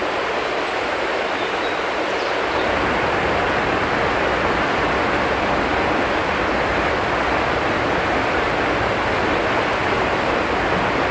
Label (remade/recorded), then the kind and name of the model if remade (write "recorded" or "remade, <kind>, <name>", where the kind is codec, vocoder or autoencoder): recorded